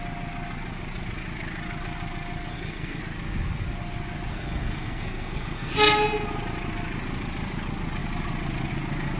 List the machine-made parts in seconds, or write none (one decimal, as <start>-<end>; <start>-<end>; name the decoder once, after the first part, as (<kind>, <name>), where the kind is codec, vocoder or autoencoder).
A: 2.5-3.0 (codec, SNAC); 4.3-5.7